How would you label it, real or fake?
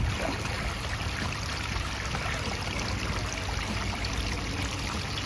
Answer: real